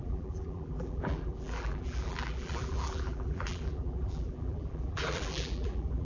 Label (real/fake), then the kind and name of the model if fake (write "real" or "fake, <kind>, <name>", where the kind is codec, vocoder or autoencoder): fake, vocoder, BigVGAN v2